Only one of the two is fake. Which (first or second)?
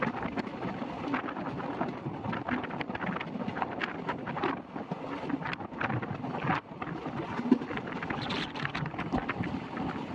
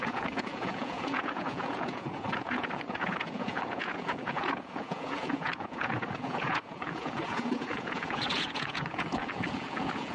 second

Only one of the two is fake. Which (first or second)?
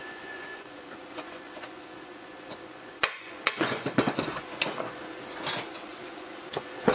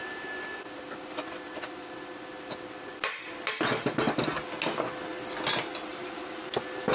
first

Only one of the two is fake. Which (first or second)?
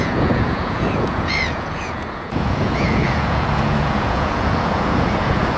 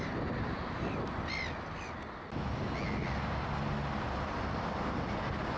first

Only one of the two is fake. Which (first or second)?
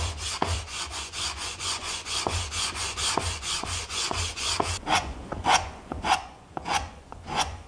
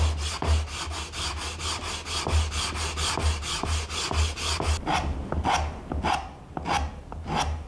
first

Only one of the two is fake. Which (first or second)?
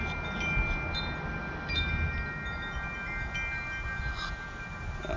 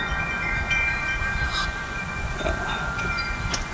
second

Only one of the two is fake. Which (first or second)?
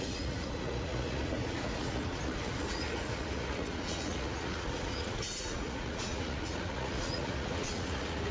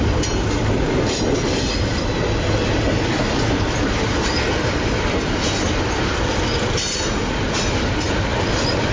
first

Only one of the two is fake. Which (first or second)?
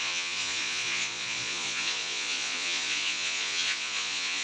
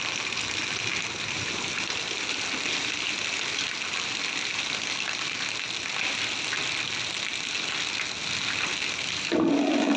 first